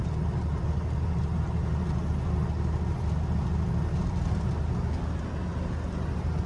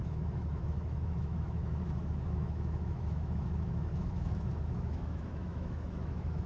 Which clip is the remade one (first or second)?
second